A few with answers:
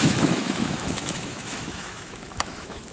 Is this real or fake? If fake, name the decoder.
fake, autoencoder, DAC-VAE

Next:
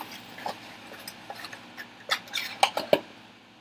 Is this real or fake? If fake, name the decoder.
real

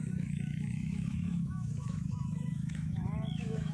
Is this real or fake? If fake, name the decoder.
fake, autoencoder, DAC-VAE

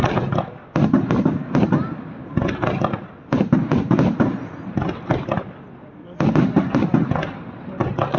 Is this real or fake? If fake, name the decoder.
real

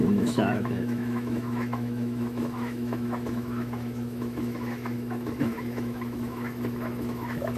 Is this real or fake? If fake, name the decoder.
fake, autoencoder, DAC-VAE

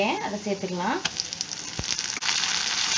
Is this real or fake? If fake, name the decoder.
real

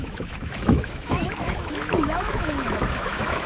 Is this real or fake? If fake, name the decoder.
fake, autoencoder, DAC-VAE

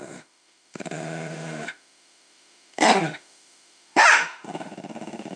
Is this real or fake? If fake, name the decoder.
fake, autoencoder, DAC-VAE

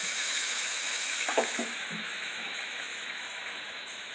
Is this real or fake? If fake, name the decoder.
fake, autoencoder, DAC-VAE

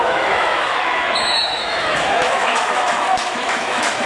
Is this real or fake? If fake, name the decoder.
fake, autoencoder, DAC-VAE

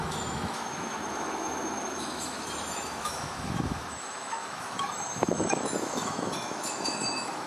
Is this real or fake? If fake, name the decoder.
fake, autoencoder, DAC-VAE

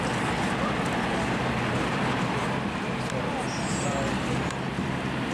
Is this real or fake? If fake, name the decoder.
real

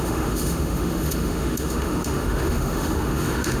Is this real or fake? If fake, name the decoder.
fake, autoencoder, DAC-VAE